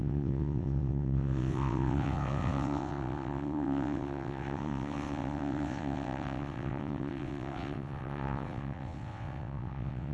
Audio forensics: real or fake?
fake